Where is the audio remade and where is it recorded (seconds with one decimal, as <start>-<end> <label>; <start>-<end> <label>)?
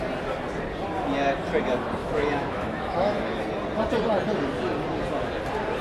0.0-2.0 recorded; 2.0-3.4 remade; 3.4-5.8 recorded